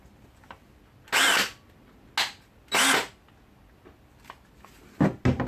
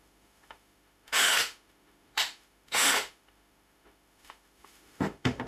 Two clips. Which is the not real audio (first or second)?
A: second